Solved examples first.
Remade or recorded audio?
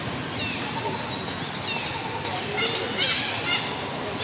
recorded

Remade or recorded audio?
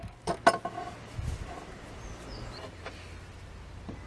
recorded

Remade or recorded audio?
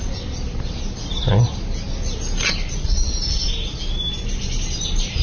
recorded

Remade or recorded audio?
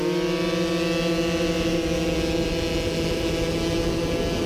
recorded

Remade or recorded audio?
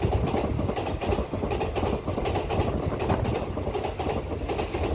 recorded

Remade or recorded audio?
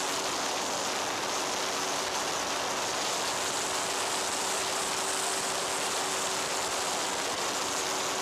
recorded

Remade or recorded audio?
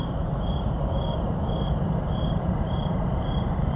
remade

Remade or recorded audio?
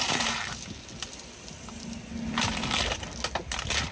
recorded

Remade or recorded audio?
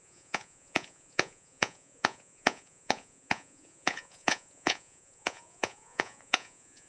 remade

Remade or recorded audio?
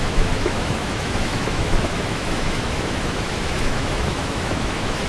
remade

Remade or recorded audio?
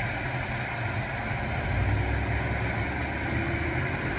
recorded